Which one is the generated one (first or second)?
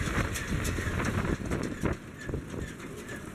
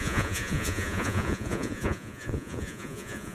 second